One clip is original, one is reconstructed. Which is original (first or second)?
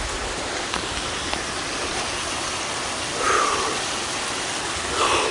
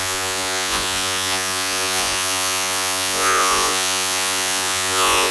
first